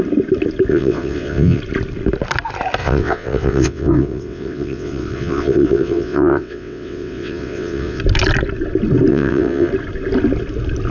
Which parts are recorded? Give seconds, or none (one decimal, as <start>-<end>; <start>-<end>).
0.0-0.7; 1.6-2.8; 8.0-9.1; 9.7-10.9